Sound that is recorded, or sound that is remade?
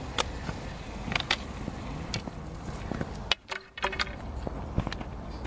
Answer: recorded